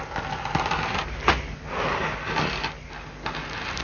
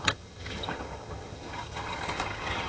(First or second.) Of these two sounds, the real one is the first